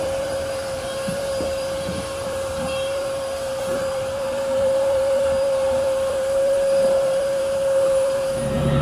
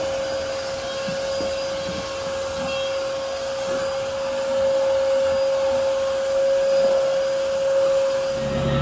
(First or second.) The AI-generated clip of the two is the first